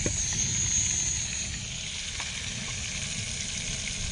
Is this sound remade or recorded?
recorded